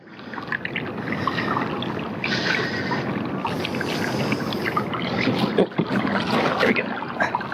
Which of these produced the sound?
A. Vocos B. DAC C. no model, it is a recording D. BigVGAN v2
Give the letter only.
C